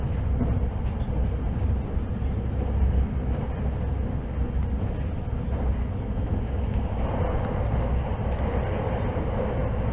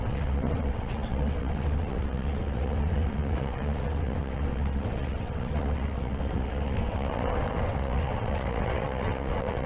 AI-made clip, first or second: second